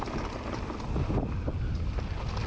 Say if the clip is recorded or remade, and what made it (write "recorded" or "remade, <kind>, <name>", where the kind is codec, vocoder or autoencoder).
recorded